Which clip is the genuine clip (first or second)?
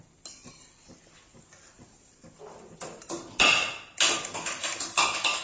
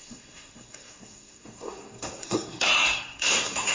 first